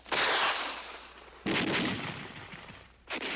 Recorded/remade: recorded